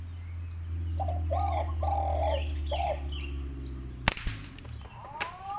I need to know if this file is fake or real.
real